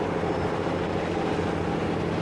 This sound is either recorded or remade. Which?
recorded